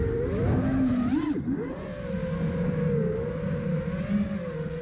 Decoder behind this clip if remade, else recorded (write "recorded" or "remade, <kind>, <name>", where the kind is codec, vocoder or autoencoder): recorded